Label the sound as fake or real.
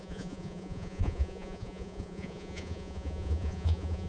fake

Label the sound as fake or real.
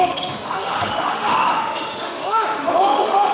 fake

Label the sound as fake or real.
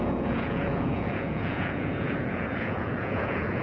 fake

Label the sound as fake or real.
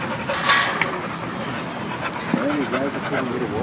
real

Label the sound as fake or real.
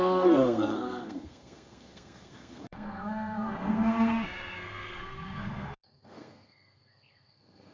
fake